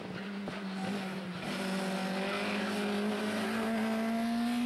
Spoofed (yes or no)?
no